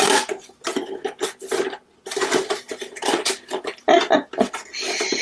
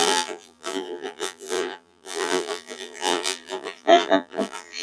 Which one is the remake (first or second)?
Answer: second